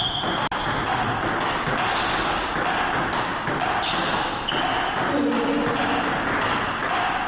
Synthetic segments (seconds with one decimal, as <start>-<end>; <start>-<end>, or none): none